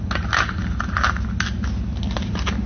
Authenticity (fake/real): real